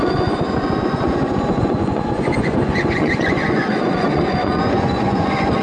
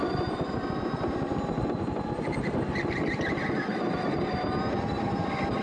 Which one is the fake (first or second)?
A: first